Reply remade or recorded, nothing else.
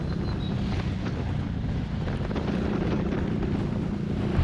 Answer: recorded